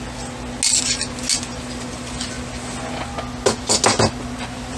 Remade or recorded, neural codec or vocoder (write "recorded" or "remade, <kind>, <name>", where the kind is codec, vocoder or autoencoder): recorded